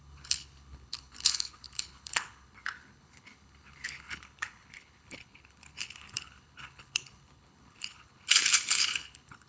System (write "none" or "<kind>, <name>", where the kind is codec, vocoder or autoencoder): codec, HILCodec